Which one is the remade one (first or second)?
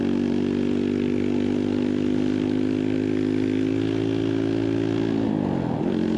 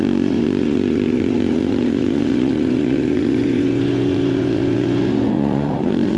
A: second